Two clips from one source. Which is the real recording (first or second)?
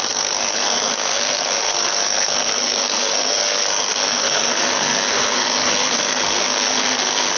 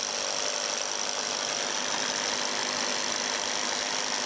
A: second